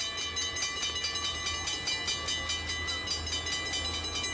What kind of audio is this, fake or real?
real